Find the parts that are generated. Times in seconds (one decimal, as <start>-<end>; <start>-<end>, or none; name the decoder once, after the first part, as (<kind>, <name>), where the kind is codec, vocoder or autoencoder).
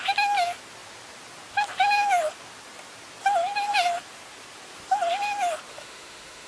5.7-6.5 (autoencoder, DAC-VAE)